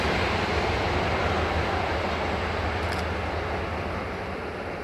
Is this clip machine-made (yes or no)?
no